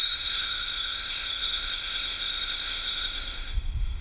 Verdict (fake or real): fake